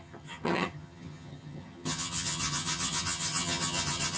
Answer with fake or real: fake